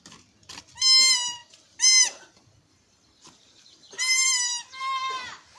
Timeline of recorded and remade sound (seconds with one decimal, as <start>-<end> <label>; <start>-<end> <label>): 0.0-1.4 recorded; 1.4-4.8 remade; 4.8-5.6 recorded